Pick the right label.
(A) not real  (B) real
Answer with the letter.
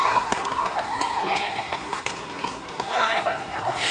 A